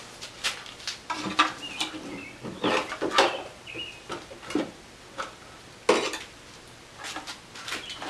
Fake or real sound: real